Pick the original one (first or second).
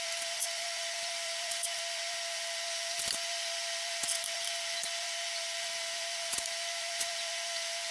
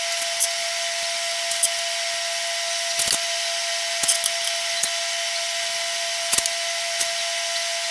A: second